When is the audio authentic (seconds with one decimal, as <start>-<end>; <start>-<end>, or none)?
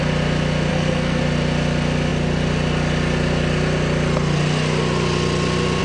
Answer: 0.0-0.7; 1.2-5.8